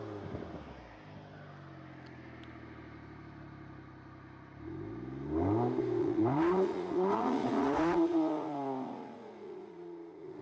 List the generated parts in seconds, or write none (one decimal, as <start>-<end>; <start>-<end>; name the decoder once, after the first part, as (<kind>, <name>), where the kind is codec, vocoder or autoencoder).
6.0-10.4 (vocoder, Vocos)